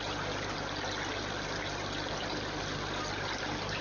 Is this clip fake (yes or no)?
no